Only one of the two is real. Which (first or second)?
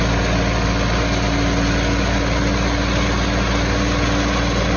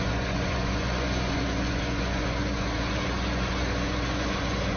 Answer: first